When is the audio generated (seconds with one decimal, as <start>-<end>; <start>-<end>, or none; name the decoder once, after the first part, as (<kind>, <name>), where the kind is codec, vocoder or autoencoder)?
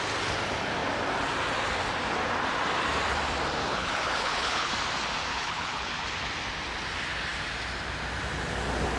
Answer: 3.6-4.7 (codec, HILCodec); 5.3-6.0